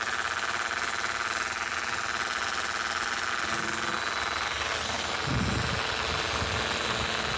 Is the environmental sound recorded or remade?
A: recorded